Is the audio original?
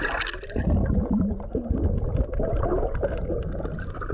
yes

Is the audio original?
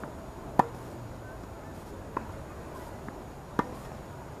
yes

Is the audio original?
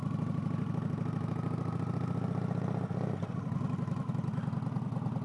yes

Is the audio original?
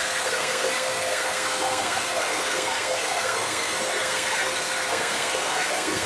no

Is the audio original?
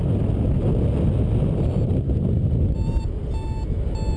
yes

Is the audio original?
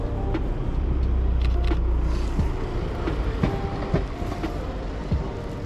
yes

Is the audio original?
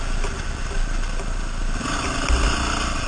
yes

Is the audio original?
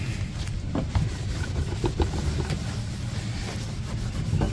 yes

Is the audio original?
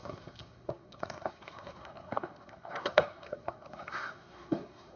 no